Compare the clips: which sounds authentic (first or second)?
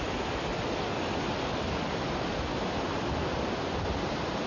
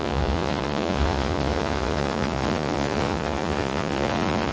first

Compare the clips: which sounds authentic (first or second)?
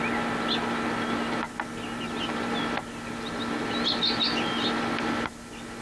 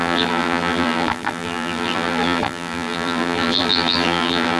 first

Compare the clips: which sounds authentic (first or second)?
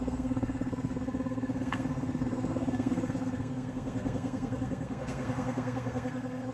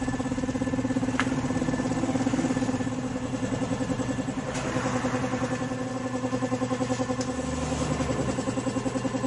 second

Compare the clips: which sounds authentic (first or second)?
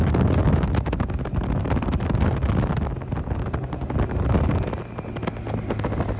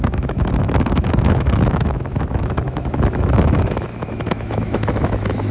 first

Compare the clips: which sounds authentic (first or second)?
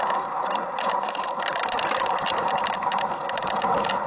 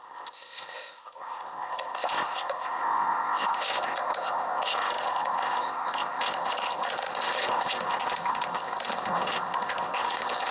first